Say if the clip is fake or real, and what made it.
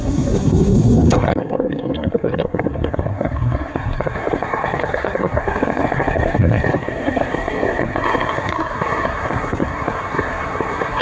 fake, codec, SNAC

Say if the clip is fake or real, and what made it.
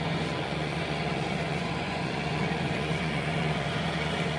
fake, vocoder, Vocos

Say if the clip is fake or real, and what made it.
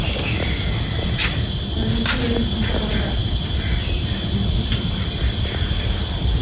real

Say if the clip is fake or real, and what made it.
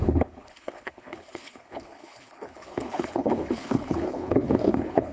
fake, codec, HILCodec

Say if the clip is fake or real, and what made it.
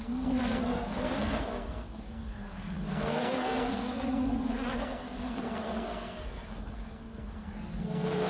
fake, codec, SNAC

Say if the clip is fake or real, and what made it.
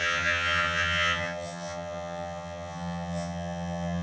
fake, vocoder, HiFi-GAN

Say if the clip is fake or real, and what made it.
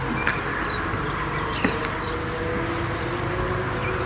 real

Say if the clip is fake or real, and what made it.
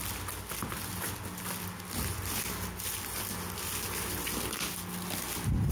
real